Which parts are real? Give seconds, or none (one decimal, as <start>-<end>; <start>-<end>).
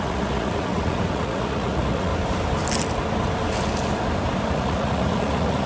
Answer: 2.1-4.5